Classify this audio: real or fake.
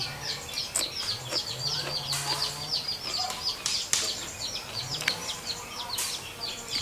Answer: real